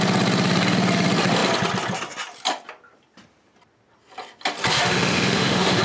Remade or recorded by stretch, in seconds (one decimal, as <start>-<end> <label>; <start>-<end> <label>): 0.0-4.7 recorded; 4.7-5.8 remade